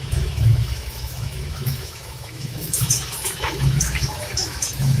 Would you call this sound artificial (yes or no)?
yes